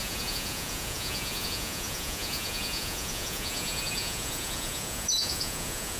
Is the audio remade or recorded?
remade